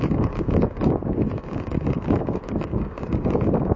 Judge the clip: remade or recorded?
remade